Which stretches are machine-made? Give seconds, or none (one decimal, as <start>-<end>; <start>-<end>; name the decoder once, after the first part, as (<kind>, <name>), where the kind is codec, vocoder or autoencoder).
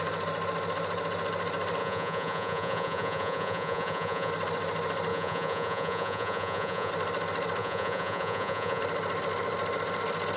1.8-4.3 (vocoder, Vocos); 5.1-6.9; 7.6-8.8